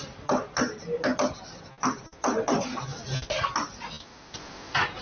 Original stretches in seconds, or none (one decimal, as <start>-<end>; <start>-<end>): 0.0-5.0